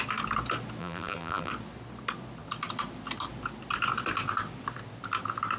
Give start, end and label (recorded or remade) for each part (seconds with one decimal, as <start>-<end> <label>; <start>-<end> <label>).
0.0-0.8 recorded; 0.8-1.5 remade; 1.5-5.6 recorded